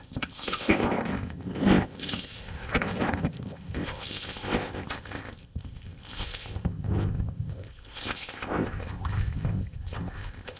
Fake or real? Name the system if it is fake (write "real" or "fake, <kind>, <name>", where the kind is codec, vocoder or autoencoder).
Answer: fake, codec, ZipCodec